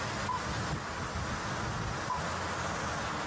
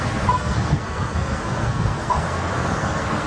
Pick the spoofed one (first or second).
second